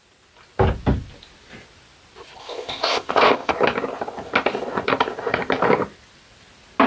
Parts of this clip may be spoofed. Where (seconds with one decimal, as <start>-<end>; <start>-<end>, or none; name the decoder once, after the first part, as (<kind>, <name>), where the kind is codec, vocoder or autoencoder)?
2.4-3.5 (codec, ZipCodec)